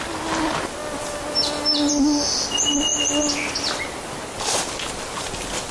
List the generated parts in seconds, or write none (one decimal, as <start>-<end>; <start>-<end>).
none